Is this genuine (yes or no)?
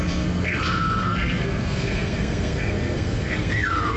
no